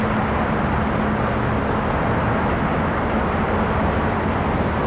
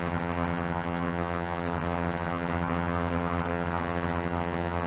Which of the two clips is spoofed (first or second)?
second